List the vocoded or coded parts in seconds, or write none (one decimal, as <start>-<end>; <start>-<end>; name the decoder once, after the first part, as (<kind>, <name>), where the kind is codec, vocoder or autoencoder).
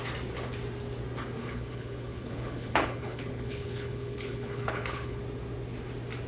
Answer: 1.4-5.2 (codec, HILCodec)